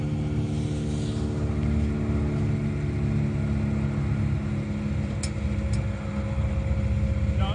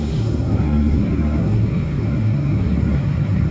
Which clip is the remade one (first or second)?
second